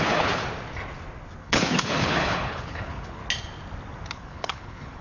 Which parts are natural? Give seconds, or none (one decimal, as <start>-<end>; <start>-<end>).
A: 0.4-1.4; 3.2-4.1

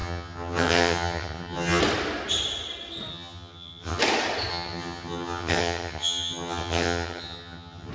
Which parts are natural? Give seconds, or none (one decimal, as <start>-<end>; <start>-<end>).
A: 1.8-3.1; 4.0-4.5

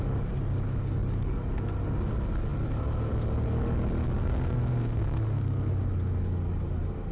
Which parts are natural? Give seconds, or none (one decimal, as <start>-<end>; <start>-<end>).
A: 0.0-4.2; 5.7-7.1